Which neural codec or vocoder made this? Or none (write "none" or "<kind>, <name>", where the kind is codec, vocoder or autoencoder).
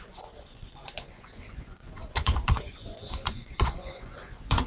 vocoder, Vocos